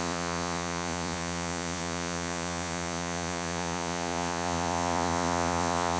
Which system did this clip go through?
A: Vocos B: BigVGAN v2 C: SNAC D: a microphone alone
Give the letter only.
A